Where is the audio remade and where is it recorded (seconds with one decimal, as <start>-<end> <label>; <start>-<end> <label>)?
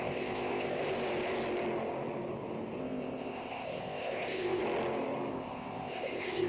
0.0-0.8 remade; 0.8-2.8 recorded; 2.8-4.6 remade; 4.6-5.3 recorded; 5.3-6.5 remade